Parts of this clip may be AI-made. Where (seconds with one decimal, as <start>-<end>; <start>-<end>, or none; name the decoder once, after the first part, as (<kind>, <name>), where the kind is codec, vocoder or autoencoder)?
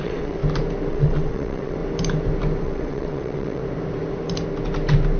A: 0.0-0.4 (vocoder, WaveNeXt); 0.9-1.8; 2.6-3.6